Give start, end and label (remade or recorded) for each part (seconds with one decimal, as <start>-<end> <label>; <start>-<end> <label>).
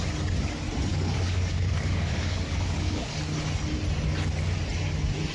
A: 0.0-0.9 recorded; 0.9-3.2 remade; 3.2-5.3 recorded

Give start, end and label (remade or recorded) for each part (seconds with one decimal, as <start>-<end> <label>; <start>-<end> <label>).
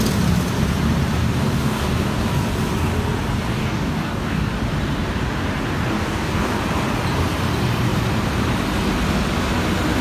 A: 0.0-1.2 recorded; 1.2-2.3 remade; 2.3-3.5 recorded; 3.5-4.5 remade; 4.5-5.9 recorded; 5.9-6.6 remade; 6.6-10.0 recorded